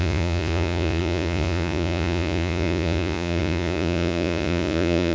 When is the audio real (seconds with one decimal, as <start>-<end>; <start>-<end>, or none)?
none